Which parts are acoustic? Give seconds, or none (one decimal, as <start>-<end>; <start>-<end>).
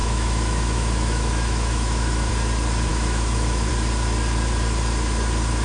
2.3-2.9; 3.7-5.6